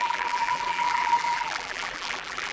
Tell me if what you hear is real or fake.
fake